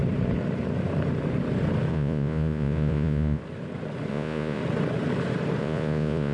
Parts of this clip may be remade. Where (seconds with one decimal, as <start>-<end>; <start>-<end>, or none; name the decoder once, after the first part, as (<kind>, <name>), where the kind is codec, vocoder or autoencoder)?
1.9-3.4 (vocoder, Vocos); 4.1-4.6; 5.6-6.3